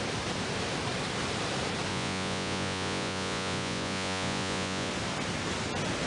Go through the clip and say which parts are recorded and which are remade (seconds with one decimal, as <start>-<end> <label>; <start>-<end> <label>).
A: 0.0-1.9 recorded; 1.9-4.9 remade; 4.9-6.1 recorded